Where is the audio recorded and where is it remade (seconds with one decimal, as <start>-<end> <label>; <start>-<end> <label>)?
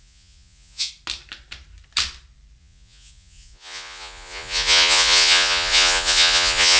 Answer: 0.0-0.9 remade; 0.9-2.6 recorded; 2.6-6.8 remade